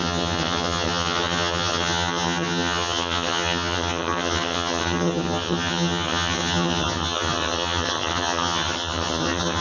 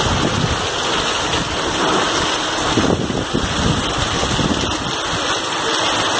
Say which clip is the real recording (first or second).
second